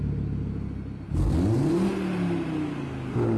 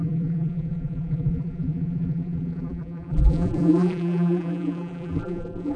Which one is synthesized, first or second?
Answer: second